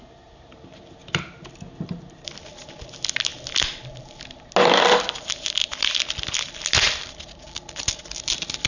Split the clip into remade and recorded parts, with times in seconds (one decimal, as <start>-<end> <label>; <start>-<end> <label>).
0.0-8.7 recorded